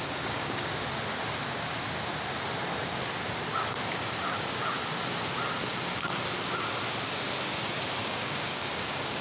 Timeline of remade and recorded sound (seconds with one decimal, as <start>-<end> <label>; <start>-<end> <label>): 0.0-0.7 remade; 0.7-8.0 recorded; 8.0-9.2 remade